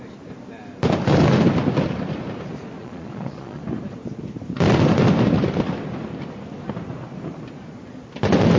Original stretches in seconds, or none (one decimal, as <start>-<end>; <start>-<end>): 0.0-2.8; 3.6-8.6